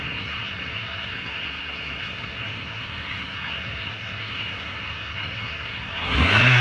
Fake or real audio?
fake